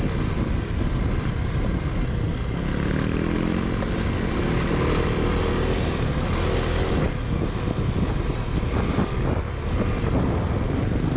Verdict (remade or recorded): recorded